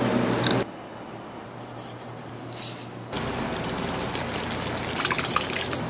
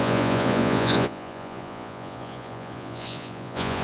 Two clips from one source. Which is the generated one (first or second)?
second